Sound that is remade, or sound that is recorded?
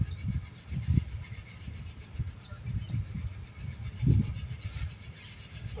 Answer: recorded